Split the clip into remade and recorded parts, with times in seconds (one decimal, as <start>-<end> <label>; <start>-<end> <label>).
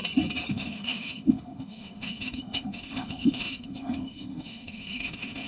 0.0-0.5 recorded; 0.5-5.5 remade